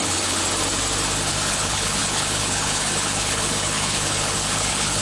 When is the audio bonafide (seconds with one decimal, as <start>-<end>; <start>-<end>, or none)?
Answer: 0.4-1.3